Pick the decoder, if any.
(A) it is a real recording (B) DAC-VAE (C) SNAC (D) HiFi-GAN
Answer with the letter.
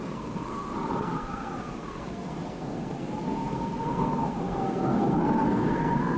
C